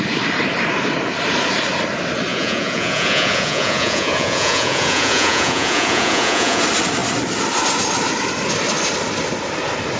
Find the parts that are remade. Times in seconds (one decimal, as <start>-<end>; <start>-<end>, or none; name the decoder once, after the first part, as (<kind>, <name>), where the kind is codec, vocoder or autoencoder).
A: 2.3-6.6 (vocoder, Vocos)